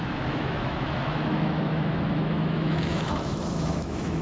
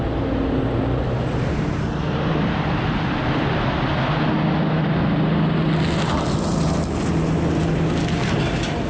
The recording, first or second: second